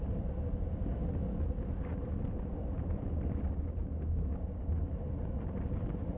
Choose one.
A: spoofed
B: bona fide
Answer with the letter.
B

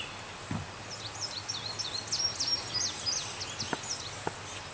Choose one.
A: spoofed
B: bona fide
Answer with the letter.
B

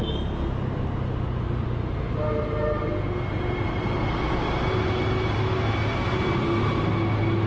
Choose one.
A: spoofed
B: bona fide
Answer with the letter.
B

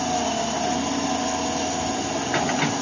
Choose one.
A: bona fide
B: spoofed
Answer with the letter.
A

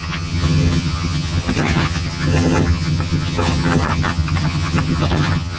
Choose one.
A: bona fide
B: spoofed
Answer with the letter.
B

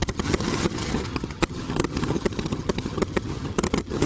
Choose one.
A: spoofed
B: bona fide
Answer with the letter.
A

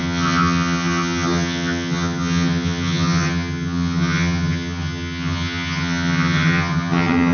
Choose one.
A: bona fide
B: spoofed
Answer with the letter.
B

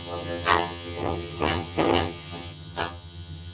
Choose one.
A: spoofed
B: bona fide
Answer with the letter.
A